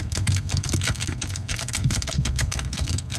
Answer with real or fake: fake